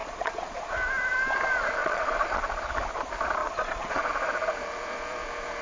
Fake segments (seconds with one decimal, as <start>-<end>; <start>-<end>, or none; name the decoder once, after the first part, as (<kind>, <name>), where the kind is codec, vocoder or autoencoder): 0.0-0.7 (vocoder, Vocos); 1.8-2.7; 3.4-4.1